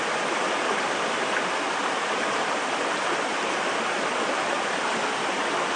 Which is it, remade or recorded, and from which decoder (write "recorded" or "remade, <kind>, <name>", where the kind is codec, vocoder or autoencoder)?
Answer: recorded